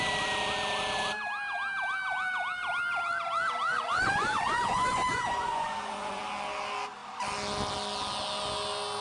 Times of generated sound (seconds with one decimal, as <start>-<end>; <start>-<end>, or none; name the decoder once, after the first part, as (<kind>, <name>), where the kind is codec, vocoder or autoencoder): 3.7-6.2 (vocoder, Vocos)